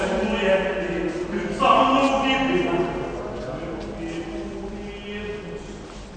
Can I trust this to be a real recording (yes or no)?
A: yes